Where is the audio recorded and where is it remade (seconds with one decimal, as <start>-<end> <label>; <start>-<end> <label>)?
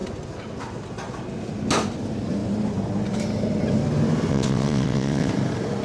0.0-4.3 recorded; 4.3-5.3 remade; 5.3-5.8 recorded